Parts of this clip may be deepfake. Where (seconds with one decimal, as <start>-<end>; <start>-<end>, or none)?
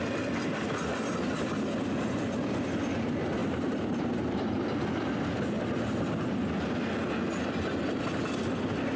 3.4-4.6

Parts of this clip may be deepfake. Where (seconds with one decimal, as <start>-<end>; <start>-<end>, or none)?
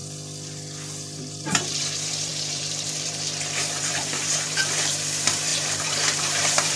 1.8-6.8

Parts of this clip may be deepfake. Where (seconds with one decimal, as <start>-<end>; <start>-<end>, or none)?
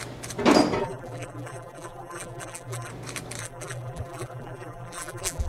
0.8-2.9; 3.4-5.5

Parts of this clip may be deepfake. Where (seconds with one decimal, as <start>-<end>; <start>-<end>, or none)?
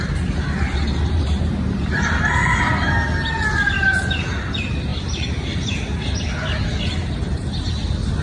0.7-1.9; 4.9-6.1